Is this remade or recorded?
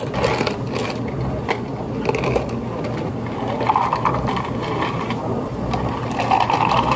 recorded